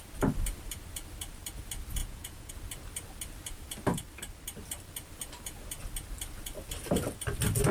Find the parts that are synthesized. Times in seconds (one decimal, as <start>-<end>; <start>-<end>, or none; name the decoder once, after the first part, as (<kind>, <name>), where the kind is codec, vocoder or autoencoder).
2.0-2.5 (vocoder, Vocos)